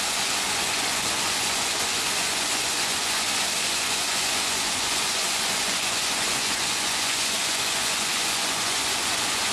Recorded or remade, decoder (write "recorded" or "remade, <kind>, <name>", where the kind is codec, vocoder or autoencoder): remade, vocoder, Vocos